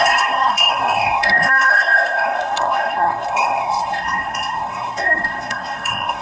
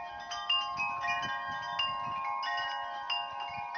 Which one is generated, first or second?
first